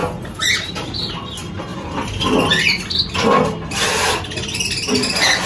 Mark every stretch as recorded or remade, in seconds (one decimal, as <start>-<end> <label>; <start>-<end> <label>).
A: 0.0-5.5 recorded